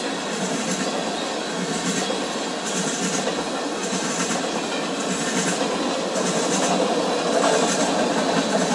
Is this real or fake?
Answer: real